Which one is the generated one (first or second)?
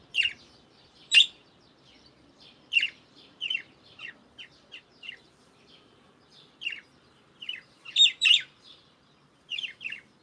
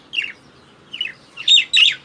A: first